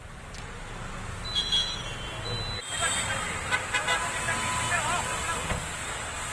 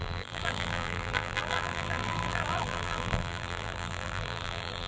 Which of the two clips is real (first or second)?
first